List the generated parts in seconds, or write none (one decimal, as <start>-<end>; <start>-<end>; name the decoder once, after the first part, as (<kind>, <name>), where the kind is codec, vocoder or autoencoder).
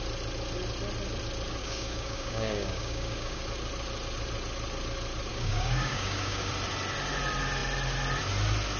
1.6-3.4 (codec, DAC); 5.3-6.5